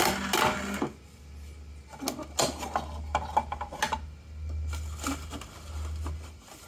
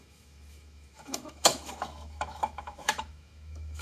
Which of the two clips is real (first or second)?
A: first